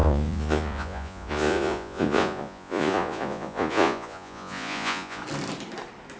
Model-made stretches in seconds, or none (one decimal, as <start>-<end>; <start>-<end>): 0.0-5.2